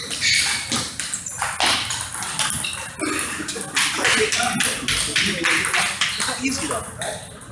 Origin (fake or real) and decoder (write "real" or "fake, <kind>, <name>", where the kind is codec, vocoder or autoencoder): real